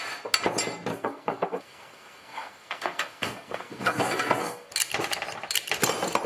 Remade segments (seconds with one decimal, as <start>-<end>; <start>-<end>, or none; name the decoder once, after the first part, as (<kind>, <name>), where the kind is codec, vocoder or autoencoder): 0.9-4.7 (codec, SNAC)